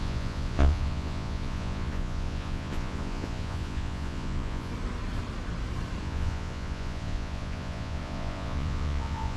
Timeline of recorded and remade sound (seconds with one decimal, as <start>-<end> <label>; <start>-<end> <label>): 0.0-4.7 remade; 4.7-6.0 recorded; 6.0-9.4 remade